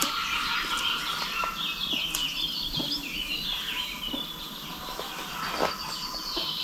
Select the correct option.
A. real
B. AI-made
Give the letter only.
A